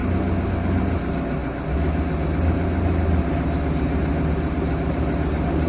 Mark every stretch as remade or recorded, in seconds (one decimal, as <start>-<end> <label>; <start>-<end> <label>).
0.0-2.7 recorded; 2.7-5.7 remade